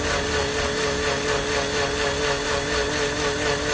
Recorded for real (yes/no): yes